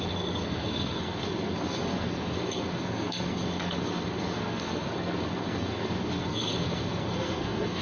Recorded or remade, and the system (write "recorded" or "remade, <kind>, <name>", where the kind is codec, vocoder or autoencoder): remade, codec, SNAC